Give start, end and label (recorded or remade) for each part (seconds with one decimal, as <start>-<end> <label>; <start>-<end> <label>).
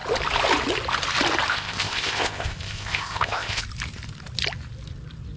0.0-1.5 recorded; 1.5-3.6 remade; 3.6-5.4 recorded